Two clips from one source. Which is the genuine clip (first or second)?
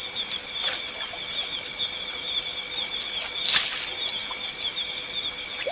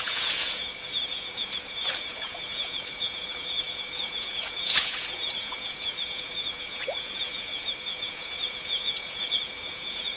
first